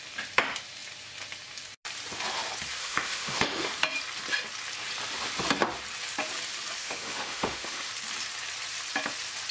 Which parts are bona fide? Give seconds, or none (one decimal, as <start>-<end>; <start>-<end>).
0.0-2.8; 3.7-6.8; 7.9-9.5